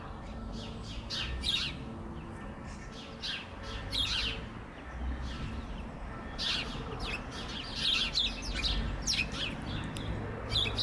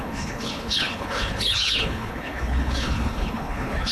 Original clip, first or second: first